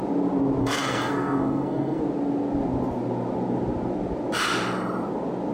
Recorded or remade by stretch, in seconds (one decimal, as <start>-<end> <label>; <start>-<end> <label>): 0.0-0.6 recorded; 0.6-2.0 remade; 2.0-5.5 recorded